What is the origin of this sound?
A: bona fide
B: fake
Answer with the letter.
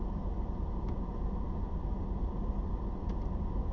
A